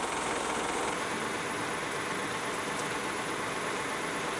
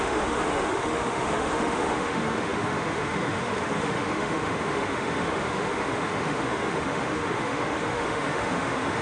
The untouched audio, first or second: first